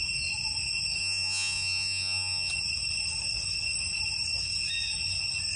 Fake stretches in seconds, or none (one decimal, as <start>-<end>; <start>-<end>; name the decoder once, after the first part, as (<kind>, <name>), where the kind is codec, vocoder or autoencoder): 1.0-2.5 (vocoder, Vocos)